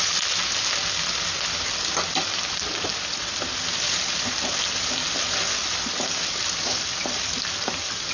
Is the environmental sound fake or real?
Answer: real